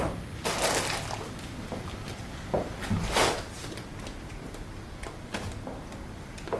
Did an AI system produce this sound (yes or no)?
no